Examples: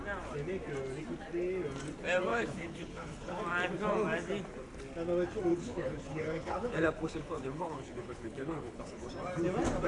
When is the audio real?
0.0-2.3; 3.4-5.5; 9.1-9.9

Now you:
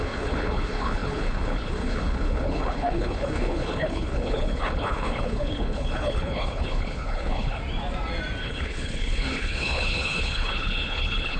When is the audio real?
7.6-8.4

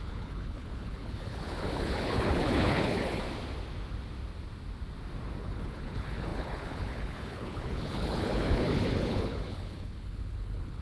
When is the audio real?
3.2-5.4

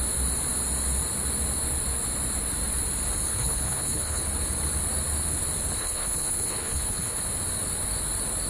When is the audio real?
0.0-3.3; 4.2-5.8; 7.2-8.5

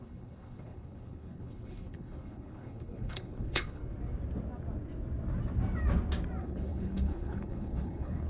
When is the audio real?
3.8-6.4

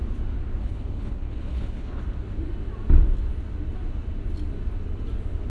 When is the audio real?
0.0-0.6; 2.0-5.5

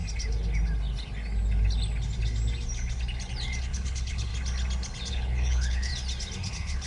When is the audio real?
0.0-3.6; 4.3-5.1; 5.9-6.5